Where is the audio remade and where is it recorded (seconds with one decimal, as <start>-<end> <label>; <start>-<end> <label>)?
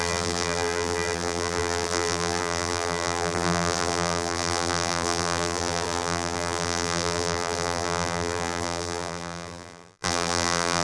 0.0-10.8 remade